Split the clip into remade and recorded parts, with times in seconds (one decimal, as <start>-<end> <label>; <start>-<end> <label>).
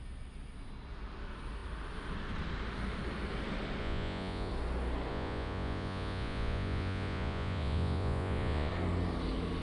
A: 0.0-3.8 recorded; 3.8-4.5 remade; 4.5-5.1 recorded; 5.1-8.7 remade; 8.7-9.6 recorded